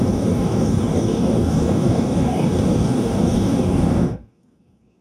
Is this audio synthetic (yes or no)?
yes